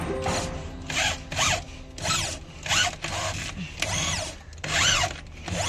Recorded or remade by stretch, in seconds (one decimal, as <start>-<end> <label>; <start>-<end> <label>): 0.0-5.7 recorded